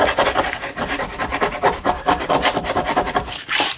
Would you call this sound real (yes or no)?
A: yes